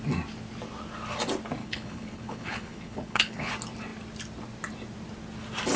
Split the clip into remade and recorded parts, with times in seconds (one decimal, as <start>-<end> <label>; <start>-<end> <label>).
0.0-1.6 recorded; 1.6-3.5 remade; 3.5-5.8 recorded